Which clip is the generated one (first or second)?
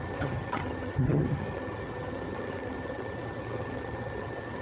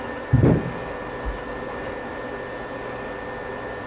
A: first